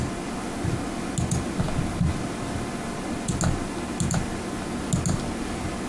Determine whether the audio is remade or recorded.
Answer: recorded